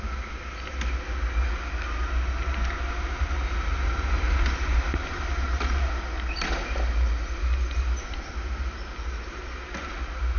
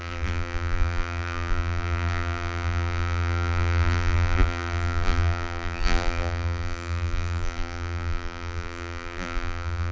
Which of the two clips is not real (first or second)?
second